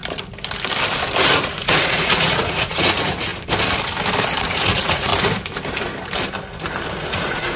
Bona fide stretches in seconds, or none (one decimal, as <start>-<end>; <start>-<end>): 0.0-1.2; 3.3-4.4; 5.1-6.9